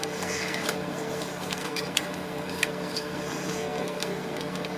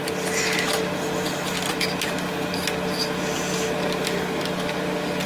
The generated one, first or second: first